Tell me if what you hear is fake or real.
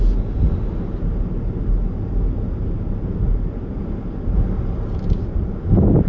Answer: real